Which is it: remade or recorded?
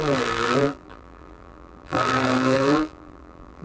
remade